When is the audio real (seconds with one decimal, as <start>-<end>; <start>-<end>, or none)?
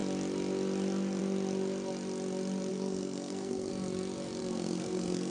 0.0-2.7; 3.7-4.4